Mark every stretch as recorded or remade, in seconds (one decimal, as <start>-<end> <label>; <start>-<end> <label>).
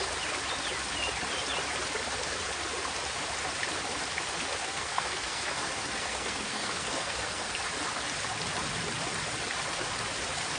0.0-4.6 recorded; 4.6-7.6 remade; 7.6-10.6 recorded